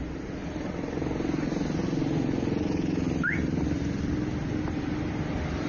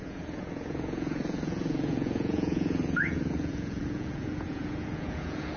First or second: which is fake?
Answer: second